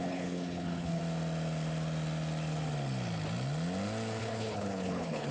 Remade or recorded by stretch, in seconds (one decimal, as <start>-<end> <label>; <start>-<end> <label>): 0.0-1.0 remade; 1.0-4.2 recorded; 4.2-5.3 remade